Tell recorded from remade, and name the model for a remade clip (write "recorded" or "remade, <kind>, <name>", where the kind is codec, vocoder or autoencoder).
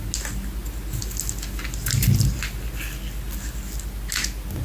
recorded